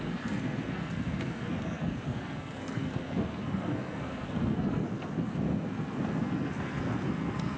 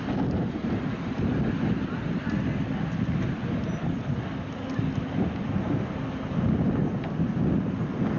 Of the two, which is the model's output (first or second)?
first